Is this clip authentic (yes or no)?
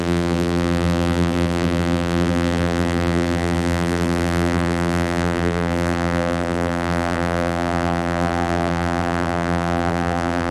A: no